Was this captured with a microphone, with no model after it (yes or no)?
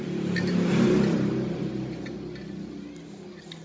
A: yes